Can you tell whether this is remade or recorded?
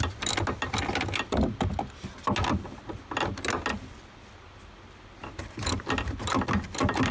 recorded